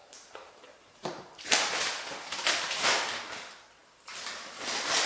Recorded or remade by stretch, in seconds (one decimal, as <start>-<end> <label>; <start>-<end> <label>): 0.0-3.1 remade; 3.1-5.1 recorded